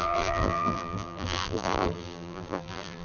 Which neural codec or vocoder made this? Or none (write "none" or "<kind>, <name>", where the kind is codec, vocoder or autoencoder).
vocoder, BigVGAN v2